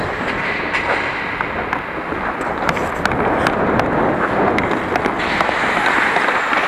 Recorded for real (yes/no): yes